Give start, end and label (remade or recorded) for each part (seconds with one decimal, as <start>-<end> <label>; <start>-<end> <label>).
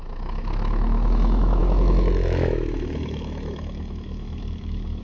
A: 0.0-5.0 remade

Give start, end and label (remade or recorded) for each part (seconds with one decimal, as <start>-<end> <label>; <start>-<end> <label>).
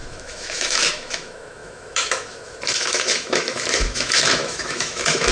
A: 0.0-5.3 remade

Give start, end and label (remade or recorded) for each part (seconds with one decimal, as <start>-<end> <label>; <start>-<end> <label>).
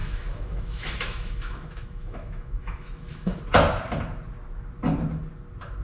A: 0.0-3.4 remade; 3.4-5.8 recorded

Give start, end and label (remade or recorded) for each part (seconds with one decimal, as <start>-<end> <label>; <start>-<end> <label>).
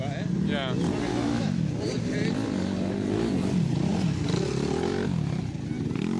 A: 0.0-1.1 recorded; 1.1-1.7 remade; 1.7-6.2 recorded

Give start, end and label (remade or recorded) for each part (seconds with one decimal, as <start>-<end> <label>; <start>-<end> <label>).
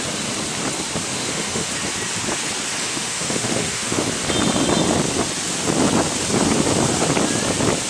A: 0.0-1.1 recorded; 1.1-1.7 remade; 1.7-2.8 recorded; 2.8-4.1 remade; 4.1-7.9 recorded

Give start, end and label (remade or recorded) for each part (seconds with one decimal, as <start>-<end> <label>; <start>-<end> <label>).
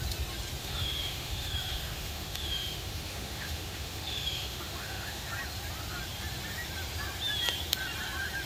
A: 0.0-0.6 recorded; 0.6-5.3 remade; 5.3-8.5 recorded